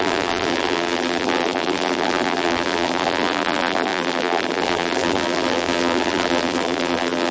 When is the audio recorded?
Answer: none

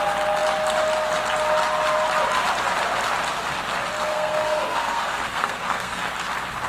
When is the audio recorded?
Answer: 0.0-4.1; 6.1-6.7

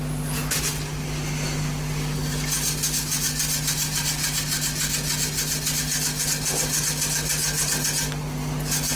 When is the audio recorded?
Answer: 0.0-9.0